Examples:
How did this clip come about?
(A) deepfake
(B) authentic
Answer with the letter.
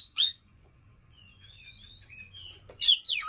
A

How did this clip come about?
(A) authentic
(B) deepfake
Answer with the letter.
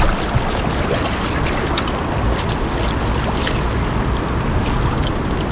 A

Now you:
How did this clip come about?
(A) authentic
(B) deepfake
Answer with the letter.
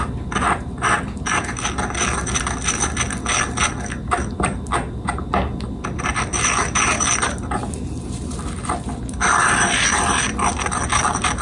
A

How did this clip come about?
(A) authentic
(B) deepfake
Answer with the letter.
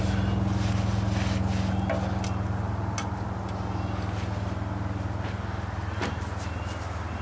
A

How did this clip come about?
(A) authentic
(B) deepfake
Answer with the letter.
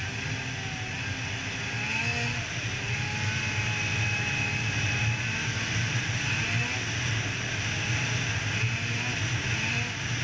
A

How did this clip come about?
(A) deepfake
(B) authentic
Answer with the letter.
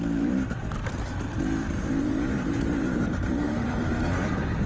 A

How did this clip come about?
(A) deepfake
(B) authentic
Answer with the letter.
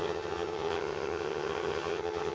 A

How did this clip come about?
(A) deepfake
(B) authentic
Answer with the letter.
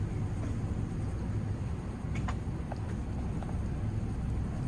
B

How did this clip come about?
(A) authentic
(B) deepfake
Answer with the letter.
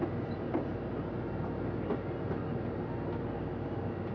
A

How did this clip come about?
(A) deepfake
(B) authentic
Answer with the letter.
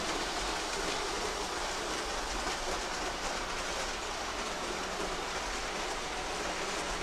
B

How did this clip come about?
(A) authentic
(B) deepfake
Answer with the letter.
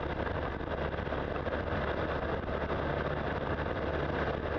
A